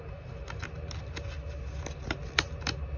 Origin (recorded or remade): recorded